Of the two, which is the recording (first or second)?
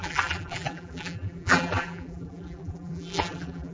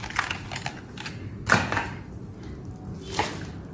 second